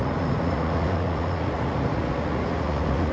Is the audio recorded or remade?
remade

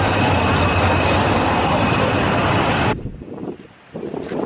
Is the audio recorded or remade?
recorded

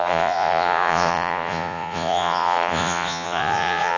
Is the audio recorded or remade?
remade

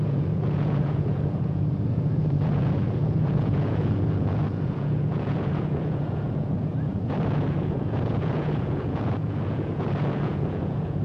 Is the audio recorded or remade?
remade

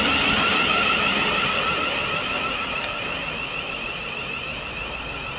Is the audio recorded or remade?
recorded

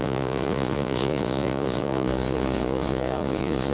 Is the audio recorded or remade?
remade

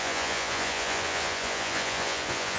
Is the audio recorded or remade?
remade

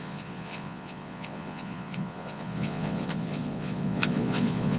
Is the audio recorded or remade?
remade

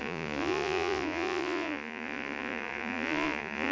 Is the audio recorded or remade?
remade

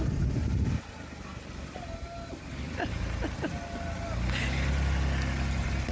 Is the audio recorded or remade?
recorded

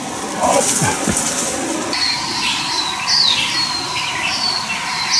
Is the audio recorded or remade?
recorded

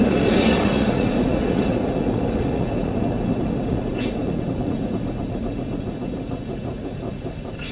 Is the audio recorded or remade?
remade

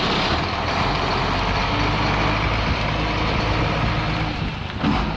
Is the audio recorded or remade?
recorded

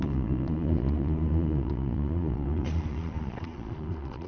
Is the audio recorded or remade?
remade